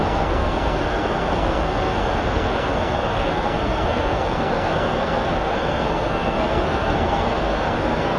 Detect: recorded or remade remade